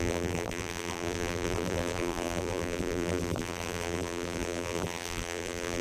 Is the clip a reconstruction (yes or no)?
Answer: yes